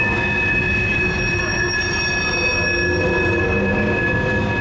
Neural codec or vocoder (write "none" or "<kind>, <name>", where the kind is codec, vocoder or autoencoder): none